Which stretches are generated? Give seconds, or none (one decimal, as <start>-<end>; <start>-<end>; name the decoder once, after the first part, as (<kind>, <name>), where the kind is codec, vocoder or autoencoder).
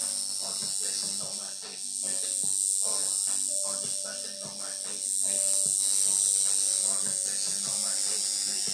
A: none